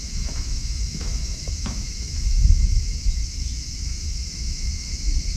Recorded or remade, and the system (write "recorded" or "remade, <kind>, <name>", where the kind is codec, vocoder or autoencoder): remade, autoencoder, DAC-VAE